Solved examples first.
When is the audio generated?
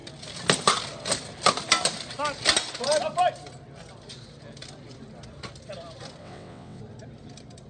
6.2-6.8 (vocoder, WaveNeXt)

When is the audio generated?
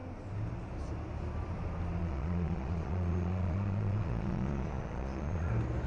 2.0-5.5 (vocoder, Vocos)